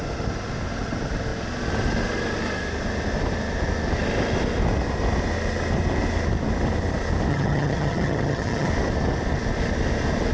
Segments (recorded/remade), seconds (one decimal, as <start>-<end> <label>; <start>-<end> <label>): 0.0-7.3 recorded; 7.3-8.7 remade; 8.7-10.3 recorded